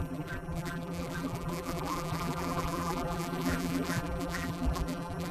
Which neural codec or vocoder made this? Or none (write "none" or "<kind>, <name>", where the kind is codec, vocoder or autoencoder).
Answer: vocoder, BigVGAN v2